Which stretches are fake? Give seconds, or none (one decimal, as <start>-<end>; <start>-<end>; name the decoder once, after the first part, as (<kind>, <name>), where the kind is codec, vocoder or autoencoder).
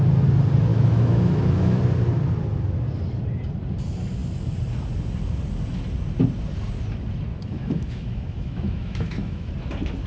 0.7-1.8 (autoencoder, DAC-VAE); 7.3-9.5